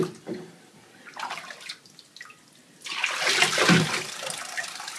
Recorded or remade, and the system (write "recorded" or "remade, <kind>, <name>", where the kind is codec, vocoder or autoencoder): remade, vocoder, BigVGAN v2